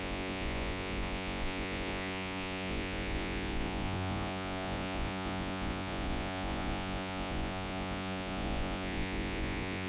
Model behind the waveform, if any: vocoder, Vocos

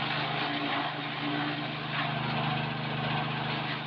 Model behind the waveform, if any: none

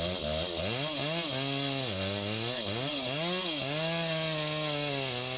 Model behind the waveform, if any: none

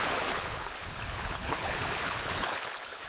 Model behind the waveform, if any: codec, HILCodec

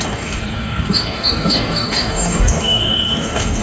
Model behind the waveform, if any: codec, DAC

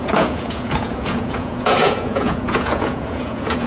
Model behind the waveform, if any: vocoder, Vocos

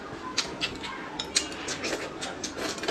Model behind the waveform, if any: none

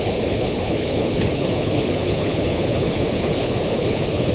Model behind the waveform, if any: codec, HILCodec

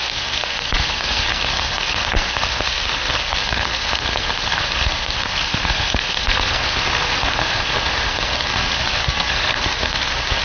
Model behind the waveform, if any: codec, SNAC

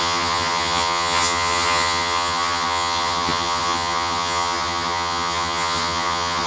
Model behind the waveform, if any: vocoder, HiFi-GAN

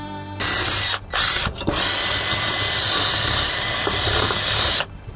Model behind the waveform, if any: none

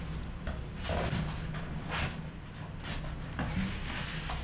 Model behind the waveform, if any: none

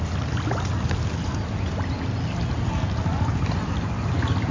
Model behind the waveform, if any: none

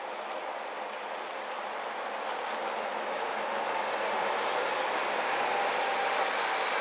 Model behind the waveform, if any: none